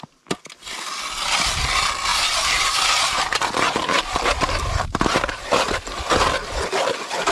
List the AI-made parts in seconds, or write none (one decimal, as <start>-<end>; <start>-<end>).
2.1-5.5